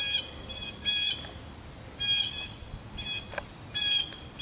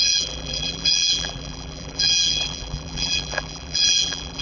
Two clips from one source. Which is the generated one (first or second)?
second